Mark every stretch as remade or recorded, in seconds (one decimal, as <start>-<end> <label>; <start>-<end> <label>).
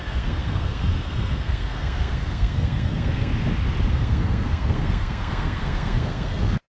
0.0-3.3 remade; 3.3-3.9 recorded; 3.9-6.7 remade